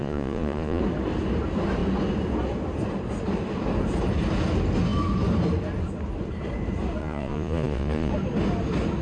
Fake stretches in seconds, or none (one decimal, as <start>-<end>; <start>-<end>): 0.0-0.8; 7.0-8.1